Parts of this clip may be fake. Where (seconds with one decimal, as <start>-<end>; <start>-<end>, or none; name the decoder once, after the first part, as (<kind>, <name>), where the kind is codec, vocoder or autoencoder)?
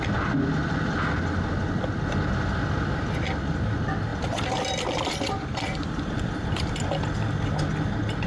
4.1-7.5 (vocoder, BigVGAN v2)